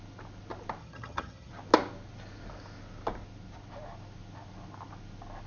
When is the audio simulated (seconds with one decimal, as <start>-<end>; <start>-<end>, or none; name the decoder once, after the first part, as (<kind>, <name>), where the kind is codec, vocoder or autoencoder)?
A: 0.8-1.5 (vocoder, HiFi-GAN)